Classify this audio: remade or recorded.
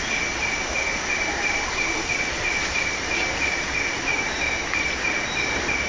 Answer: recorded